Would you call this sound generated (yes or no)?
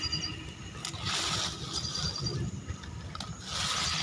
no